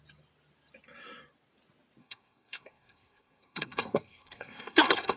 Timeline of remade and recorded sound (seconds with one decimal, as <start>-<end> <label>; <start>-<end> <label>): 0.0-2.0 recorded; 2.0-5.2 remade